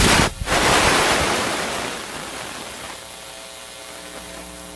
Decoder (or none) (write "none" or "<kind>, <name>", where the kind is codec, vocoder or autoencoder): none